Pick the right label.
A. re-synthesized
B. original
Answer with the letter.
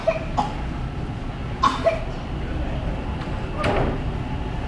B